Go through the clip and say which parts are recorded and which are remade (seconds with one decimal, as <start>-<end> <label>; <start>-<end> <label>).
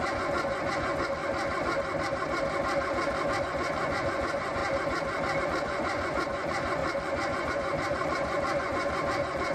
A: 0.0-1.2 remade; 1.2-3.4 recorded; 3.4-4.6 remade; 4.6-5.4 recorded; 5.4-9.5 remade